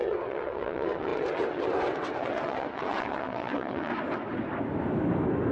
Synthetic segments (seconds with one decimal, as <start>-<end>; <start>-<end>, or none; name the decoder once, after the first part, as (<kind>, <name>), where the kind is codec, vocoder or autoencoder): 0.0-3.9 (vocoder, WaveNeXt)